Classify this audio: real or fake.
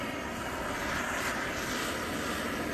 real